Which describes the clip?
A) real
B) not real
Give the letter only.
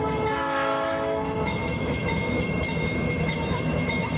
B